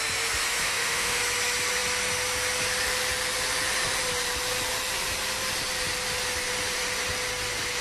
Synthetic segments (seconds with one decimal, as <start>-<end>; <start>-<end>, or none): 0.6-1.2